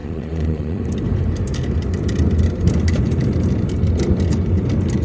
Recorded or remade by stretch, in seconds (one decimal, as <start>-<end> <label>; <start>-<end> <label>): 0.0-0.8 remade; 0.8-5.0 recorded